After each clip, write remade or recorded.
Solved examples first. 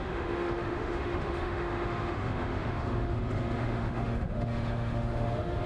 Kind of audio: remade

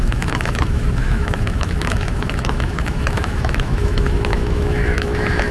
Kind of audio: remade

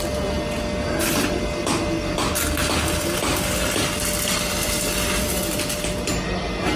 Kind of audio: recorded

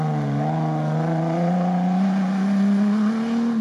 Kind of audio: recorded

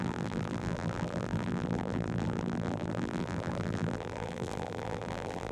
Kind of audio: remade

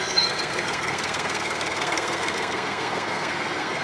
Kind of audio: remade